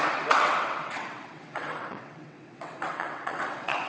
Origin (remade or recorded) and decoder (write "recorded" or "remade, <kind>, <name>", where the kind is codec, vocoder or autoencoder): remade, vocoder, WaveNeXt